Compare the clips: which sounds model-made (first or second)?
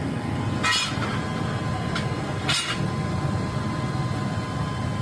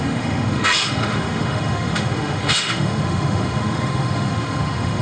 second